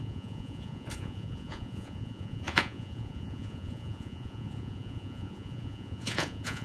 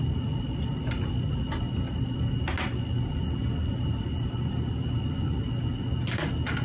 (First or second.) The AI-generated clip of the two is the first